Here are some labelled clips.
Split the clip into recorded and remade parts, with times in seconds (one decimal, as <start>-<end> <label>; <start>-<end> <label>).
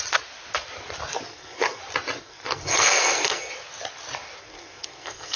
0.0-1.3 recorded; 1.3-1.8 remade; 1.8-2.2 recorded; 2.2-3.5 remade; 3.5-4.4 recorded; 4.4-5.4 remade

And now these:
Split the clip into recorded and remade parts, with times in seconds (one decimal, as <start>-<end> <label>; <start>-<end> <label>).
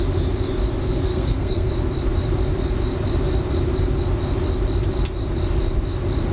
0.0-0.8 recorded; 0.8-1.7 remade; 1.7-6.3 recorded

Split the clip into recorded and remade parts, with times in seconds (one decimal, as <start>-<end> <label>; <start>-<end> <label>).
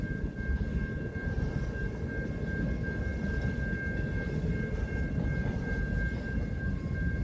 0.0-7.2 recorded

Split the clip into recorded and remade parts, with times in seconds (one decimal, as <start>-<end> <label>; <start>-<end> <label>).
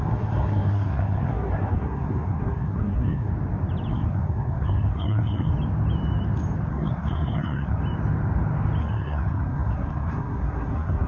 0.0-3.3 remade; 3.3-3.9 recorded; 3.9-5.5 remade; 5.5-6.7 recorded; 6.7-7.8 remade; 7.8-8.8 recorded; 8.8-11.1 remade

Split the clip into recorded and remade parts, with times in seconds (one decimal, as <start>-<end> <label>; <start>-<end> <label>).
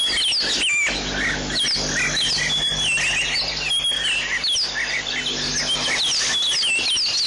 0.0-7.3 recorded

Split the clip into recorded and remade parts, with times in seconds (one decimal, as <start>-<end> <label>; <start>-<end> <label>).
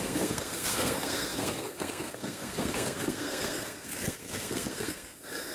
0.0-5.5 remade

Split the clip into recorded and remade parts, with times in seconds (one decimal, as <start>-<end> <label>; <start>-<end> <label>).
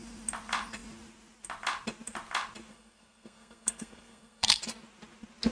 0.0-2.7 recorded; 2.7-4.6 remade; 4.6-5.5 recorded